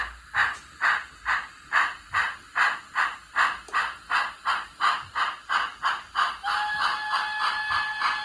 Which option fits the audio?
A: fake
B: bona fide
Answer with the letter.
B